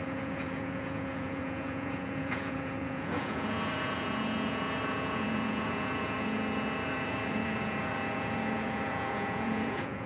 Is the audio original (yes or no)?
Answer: no